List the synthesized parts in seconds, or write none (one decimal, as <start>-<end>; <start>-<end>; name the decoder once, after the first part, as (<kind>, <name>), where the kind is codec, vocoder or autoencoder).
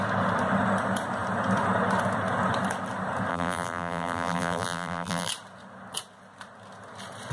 3.3-5.3 (vocoder, BigVGAN v2)